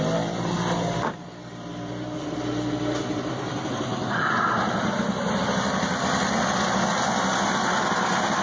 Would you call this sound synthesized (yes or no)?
yes